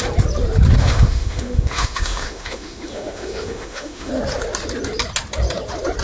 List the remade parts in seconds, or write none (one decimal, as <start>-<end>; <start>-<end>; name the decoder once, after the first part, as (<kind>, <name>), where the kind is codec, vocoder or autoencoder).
0.8-4.1 (autoencoder, DAC-VAE)